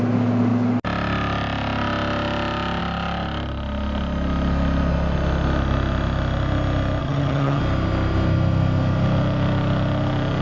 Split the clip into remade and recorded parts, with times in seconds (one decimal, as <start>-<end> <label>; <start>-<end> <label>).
0.0-7.0 recorded; 7.0-7.6 remade; 7.6-10.4 recorded